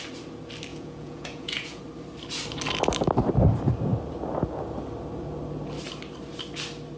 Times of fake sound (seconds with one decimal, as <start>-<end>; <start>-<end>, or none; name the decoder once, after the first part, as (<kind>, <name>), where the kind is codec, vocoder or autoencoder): 0.7-1.8 (vocoder, Vocos)

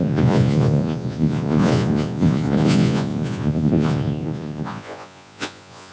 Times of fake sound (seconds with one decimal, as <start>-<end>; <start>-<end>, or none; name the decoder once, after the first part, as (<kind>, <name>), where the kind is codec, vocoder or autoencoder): 0.0-5.9 (vocoder, Vocos)